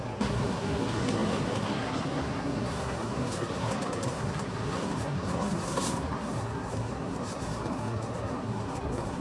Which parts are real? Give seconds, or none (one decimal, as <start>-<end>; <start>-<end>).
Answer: none